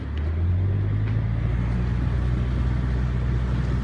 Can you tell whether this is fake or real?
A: real